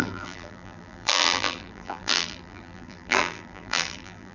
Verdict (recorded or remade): remade